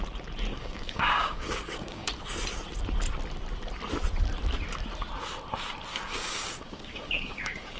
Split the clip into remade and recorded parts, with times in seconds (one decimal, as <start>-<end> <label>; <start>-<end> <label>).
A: 0.0-0.5 recorded; 0.5-2.1 remade; 2.1-5.9 recorded; 5.9-7.8 remade